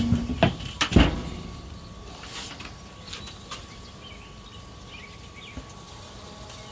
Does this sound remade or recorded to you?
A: recorded